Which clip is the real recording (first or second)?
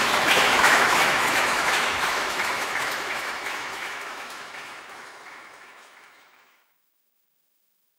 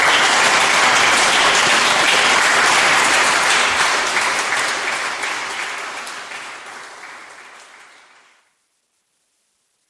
second